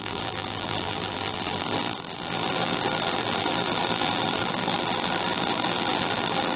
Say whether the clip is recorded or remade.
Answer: remade